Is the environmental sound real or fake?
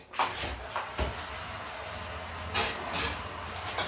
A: real